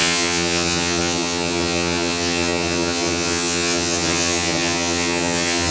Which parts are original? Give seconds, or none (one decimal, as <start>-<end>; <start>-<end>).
none

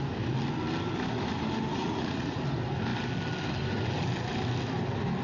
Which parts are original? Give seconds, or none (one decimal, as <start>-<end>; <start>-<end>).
0.0-1.7; 2.4-5.2

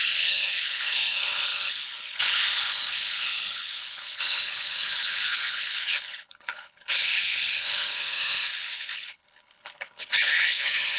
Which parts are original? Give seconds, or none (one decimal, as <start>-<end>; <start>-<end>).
none

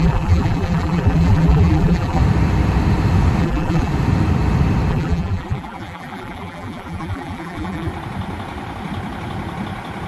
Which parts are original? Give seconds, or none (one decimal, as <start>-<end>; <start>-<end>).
2.2-3.4; 3.9-4.9; 7.9-10.1

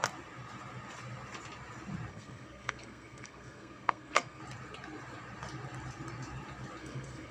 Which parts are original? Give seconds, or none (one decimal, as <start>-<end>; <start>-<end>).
0.0-2.1; 4.4-6.8